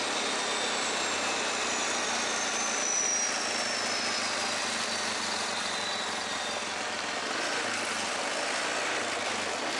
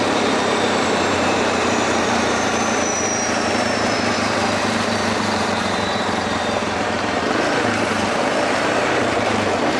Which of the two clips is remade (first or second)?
second